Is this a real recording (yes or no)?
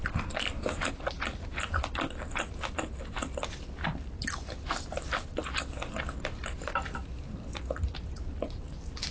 yes